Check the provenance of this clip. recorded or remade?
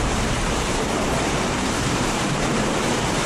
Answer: remade